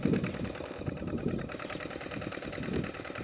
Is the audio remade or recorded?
recorded